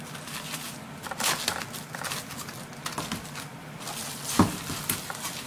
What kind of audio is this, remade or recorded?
recorded